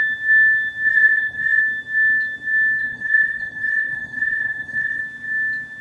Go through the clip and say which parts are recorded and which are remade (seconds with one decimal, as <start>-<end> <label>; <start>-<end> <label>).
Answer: 0.0-0.9 recorded; 0.9-1.6 remade; 1.6-2.8 recorded; 2.8-5.0 remade; 5.0-5.8 recorded